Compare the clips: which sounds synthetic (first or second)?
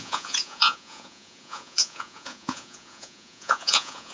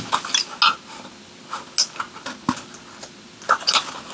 first